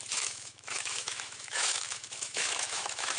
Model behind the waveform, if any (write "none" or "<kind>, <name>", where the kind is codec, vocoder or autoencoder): autoencoder, DAC-VAE